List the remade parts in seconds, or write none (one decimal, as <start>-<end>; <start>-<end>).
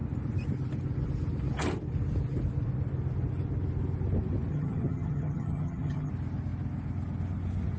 4.5-6.1